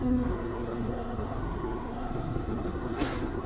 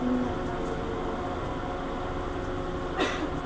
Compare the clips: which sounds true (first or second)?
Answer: second